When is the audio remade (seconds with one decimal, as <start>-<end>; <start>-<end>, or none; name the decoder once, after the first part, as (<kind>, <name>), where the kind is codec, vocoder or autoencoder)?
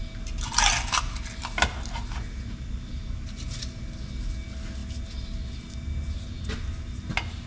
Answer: none